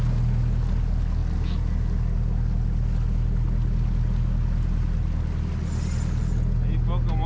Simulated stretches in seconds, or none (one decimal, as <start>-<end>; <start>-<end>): none